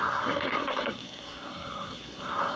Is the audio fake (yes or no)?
yes